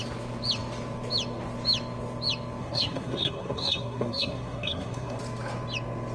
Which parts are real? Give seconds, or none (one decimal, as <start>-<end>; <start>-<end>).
0.0-2.6; 5.2-6.1